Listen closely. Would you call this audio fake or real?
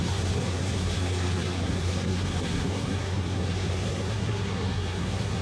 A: fake